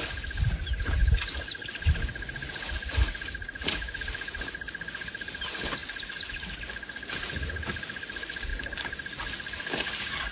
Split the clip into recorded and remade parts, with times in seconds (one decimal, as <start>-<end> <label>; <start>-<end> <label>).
0.0-3.4 recorded; 3.4-3.9 remade; 3.9-10.3 recorded